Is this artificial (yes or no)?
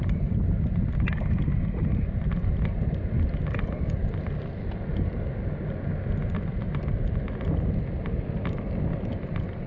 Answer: no